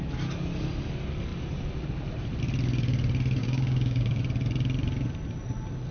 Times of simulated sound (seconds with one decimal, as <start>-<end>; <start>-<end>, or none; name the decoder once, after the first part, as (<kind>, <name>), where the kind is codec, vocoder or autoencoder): 3.4-4.2 (codec, DAC)